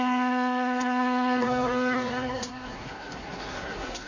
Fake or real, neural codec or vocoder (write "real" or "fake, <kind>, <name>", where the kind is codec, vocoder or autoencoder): fake, codec, SNAC